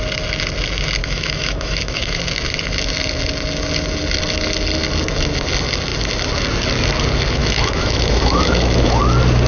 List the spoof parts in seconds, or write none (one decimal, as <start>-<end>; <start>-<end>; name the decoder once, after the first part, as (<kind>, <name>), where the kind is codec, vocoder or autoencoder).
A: 1.0-2.2 (autoencoder, DAC-VAE); 7.4-9.0